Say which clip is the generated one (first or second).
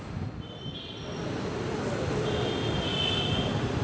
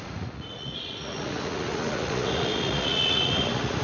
second